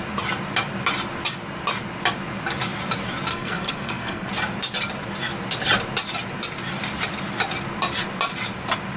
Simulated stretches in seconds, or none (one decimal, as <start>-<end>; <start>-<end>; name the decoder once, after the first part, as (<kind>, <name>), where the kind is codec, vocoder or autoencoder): 3.3-4.3 (codec, SNAC)